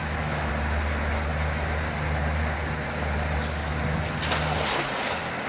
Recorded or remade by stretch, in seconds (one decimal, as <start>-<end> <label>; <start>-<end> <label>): 0.0-0.5 remade; 0.5-5.5 recorded